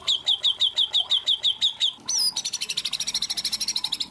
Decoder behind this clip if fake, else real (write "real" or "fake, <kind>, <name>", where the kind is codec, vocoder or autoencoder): real